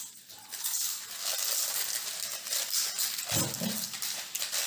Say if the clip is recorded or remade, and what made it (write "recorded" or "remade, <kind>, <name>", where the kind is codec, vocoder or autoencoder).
recorded